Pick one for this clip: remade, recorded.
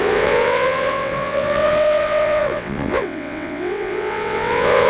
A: remade